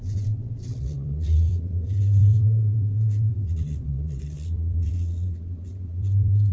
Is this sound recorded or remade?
remade